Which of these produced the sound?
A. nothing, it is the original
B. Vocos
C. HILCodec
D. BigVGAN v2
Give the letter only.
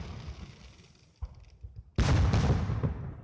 A